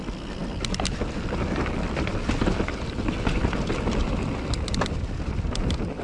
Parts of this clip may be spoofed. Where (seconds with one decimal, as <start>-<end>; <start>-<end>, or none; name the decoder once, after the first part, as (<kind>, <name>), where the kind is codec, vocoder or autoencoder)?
none